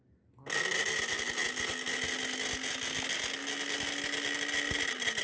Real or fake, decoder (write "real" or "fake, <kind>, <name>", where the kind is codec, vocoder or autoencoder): real